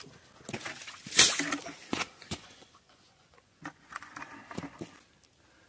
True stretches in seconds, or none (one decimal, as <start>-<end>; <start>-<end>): 0.0-1.9; 4.3-5.7